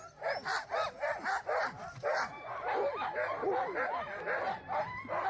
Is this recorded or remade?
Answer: recorded